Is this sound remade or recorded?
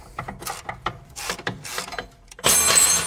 remade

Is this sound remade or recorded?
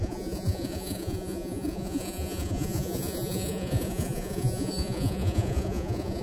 remade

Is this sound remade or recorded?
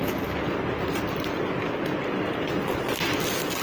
recorded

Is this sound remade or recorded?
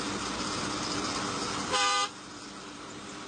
recorded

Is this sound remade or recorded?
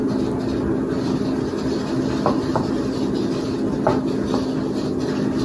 recorded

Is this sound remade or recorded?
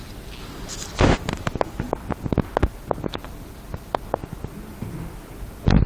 recorded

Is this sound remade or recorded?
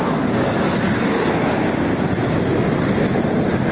recorded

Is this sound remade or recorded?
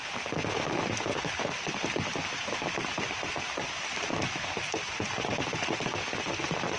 recorded